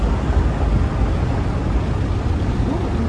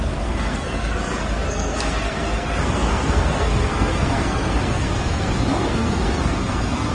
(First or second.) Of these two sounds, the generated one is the second